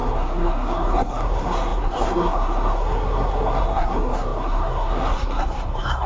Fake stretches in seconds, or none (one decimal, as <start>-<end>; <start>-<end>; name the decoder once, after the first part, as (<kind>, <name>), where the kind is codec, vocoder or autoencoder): 0.0-6.1 (codec, SNAC)